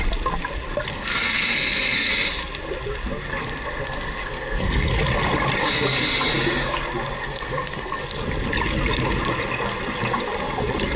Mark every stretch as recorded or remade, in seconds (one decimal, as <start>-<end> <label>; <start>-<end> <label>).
0.0-0.9 recorded; 0.9-2.1 remade; 2.1-3.4 recorded; 3.4-5.0 remade; 5.0-7.2 recorded; 7.2-8.0 remade; 8.0-11.0 recorded